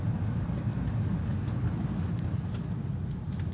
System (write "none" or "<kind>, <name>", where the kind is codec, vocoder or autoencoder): none